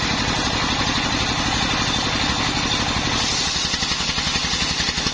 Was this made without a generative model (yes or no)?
yes